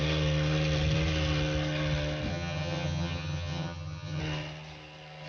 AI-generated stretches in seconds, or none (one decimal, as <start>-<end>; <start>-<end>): 2.3-4.2

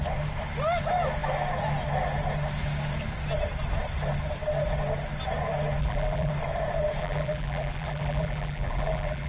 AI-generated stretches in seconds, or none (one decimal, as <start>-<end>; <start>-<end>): 5.8-6.3; 7.0-9.3

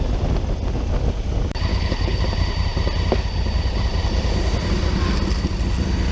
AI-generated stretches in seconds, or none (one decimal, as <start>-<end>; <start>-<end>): 1.7-2.2

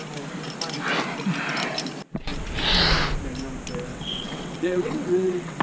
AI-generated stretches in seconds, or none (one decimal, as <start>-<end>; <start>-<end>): 3.9-5.6

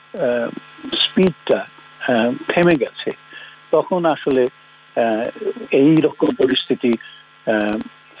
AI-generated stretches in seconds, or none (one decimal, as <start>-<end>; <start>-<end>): 6.1-6.7

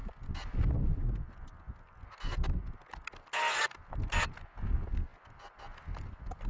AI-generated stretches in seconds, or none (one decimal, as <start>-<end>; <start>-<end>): none